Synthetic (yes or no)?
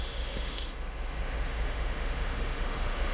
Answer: yes